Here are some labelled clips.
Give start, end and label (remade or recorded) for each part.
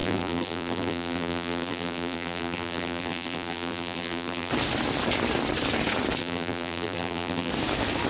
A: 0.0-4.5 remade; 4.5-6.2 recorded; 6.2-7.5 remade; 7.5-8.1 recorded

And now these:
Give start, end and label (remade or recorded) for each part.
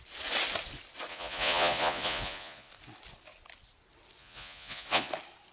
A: 0.0-1.1 recorded; 1.1-2.7 remade; 2.7-4.2 recorded; 4.2-5.1 remade; 5.1-5.5 recorded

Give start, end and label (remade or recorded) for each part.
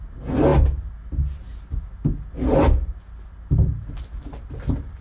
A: 0.0-5.0 recorded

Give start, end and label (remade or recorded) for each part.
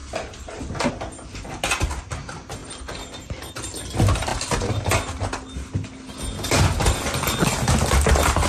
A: 0.0-2.6 recorded; 2.6-3.5 remade; 3.5-8.5 recorded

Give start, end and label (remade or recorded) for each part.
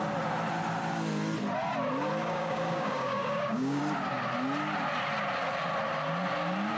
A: 0.0-2.2 recorded; 2.2-3.8 remade; 3.8-6.8 recorded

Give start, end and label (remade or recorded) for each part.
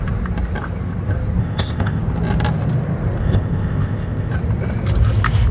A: 0.0-1.4 recorded; 1.4-2.0 remade; 2.0-3.2 recorded; 3.2-4.3 remade; 4.3-5.5 recorded